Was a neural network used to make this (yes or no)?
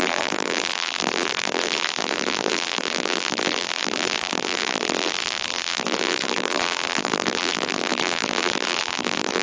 yes